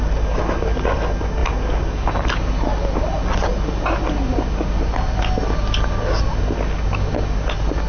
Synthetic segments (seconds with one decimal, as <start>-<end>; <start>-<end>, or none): none